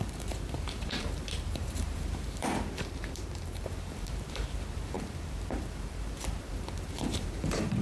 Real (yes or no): no